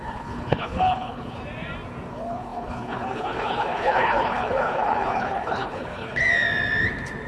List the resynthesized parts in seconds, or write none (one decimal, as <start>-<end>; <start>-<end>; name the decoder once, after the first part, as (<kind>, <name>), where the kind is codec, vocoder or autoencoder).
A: 0.0-1.4 (codec, HILCodec); 2.1-6.2